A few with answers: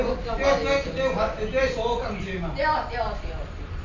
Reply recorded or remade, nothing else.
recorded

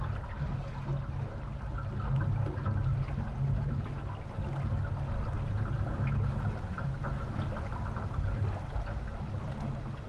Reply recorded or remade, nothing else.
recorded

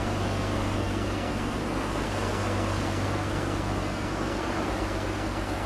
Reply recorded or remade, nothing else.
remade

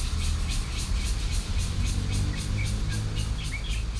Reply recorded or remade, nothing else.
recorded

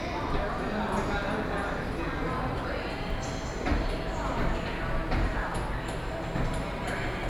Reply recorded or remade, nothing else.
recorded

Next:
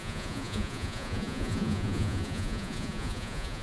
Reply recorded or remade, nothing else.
remade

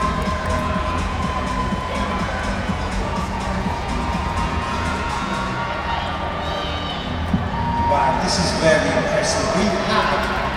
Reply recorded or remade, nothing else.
remade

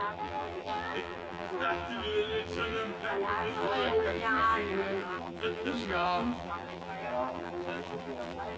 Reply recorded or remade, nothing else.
remade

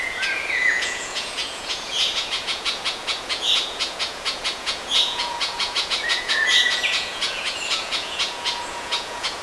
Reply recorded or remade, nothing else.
remade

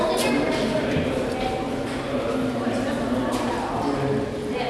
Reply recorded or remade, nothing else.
recorded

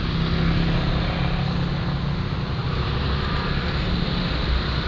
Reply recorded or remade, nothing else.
recorded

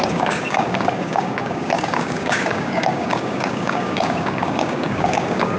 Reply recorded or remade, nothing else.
remade